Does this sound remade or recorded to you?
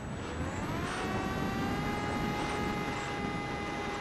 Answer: recorded